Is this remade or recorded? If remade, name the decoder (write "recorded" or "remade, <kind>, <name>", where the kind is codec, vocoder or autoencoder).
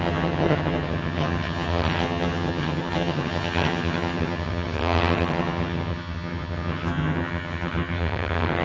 remade, vocoder, HiFi-GAN